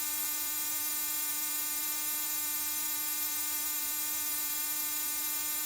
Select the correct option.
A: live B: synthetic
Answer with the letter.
B